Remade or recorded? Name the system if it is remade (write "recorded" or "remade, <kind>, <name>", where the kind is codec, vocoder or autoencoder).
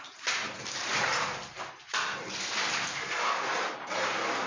recorded